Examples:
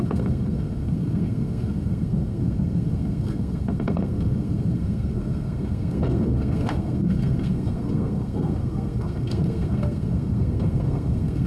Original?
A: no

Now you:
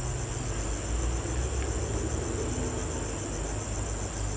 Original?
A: yes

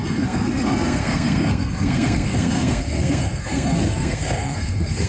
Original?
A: no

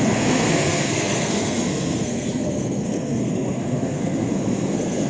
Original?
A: no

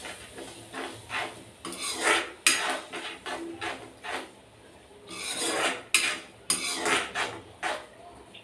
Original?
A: yes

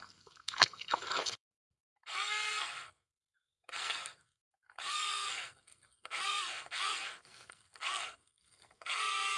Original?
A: no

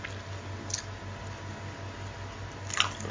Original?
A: yes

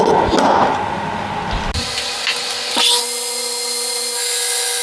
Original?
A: yes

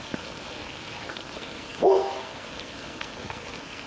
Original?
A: no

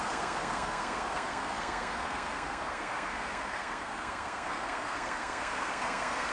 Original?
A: no